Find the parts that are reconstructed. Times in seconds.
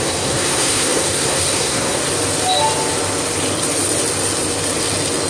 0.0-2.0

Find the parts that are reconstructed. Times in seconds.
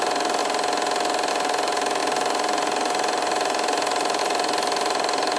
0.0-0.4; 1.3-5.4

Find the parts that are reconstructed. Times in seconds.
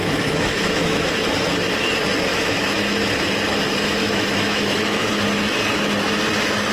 0.0-1.1; 2.3-2.8; 4.0-5.1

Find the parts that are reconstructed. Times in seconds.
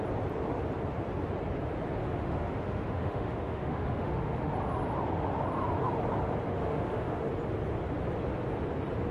2.0-4.5; 6.5-7.2